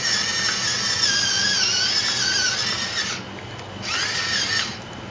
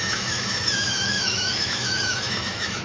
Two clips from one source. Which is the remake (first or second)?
second